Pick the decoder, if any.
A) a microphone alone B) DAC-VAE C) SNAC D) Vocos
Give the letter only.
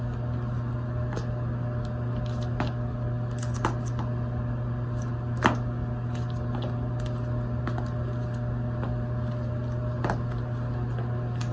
A